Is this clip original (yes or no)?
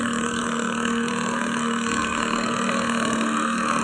no